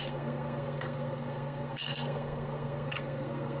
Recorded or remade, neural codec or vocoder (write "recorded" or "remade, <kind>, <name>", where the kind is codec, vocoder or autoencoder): remade, codec, SNAC